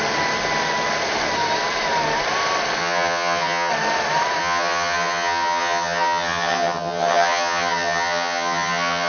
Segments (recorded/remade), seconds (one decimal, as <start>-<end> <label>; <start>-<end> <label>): 0.0-2.8 recorded; 2.8-3.7 remade; 3.7-4.4 recorded; 4.4-9.1 remade